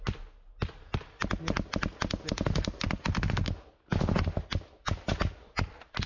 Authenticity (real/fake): real